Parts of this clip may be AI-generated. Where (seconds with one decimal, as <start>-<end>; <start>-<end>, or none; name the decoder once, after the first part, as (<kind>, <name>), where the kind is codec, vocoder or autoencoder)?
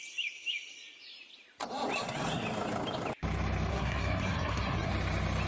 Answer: 3.7-4.9 (codec, SNAC)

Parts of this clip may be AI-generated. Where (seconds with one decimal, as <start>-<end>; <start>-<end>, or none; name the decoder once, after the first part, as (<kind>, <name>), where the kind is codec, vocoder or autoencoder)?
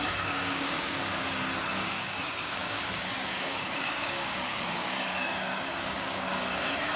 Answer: 0.0-1.1 (codec, DAC); 1.7-7.0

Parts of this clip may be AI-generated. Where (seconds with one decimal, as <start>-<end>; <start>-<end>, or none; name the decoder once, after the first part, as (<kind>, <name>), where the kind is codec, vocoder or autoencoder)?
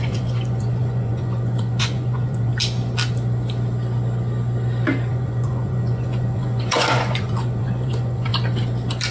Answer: 0.0-2.5 (vocoder, Vocos); 5.1-8.3